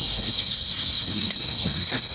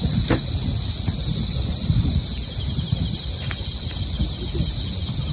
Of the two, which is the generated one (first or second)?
first